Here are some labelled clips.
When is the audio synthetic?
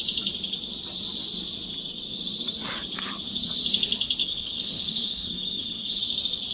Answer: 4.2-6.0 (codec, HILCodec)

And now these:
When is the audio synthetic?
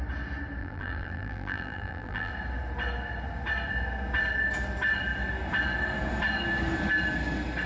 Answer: 0.6-2.3 (vocoder, BigVGAN v2)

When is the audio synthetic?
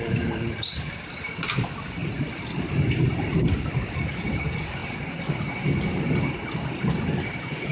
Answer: 0.0-4.8 (vocoder, BigVGAN v2); 7.0-7.7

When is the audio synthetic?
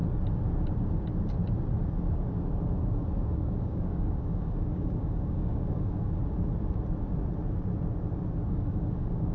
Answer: 3.2-6.2 (codec, DAC); 8.5-9.3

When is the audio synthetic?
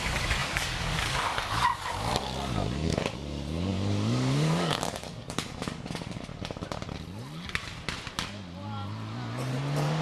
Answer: 0.0-6.3 (codec, DAC); 9.5-10.0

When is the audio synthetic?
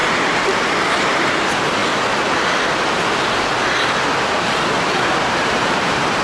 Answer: 1.0-1.8 (vocoder, BigVGAN v2); 5.3-6.2